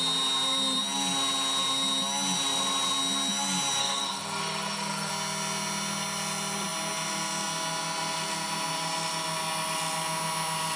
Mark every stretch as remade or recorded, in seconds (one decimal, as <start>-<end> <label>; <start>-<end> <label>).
0.0-3.8 recorded; 3.8-5.1 remade; 5.1-10.8 recorded